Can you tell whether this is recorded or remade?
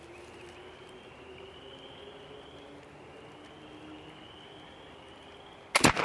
recorded